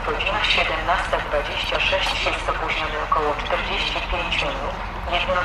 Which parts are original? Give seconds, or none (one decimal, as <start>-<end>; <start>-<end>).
0.0-5.4